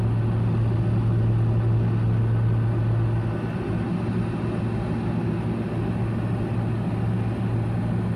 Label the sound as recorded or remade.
recorded